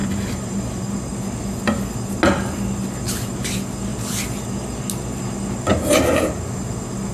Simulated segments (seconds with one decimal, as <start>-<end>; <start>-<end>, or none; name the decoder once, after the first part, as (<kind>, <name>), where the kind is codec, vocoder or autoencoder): 0.0-1.1 (vocoder, BigVGAN v2); 5.7-6.6